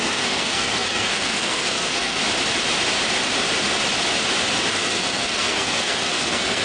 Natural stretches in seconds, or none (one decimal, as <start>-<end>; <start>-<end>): 2.2-4.7